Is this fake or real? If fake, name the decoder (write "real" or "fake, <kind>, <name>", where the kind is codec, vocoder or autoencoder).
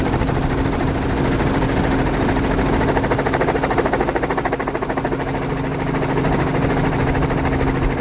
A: real